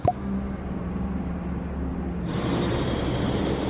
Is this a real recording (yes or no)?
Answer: yes